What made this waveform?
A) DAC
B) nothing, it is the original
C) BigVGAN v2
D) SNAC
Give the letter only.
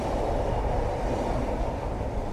B